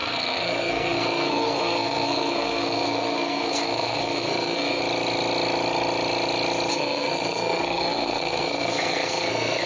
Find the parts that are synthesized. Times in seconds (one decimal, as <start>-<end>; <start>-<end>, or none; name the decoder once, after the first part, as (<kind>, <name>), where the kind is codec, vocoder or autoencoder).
0.0-4.8 (codec, SNAC); 6.7-9.7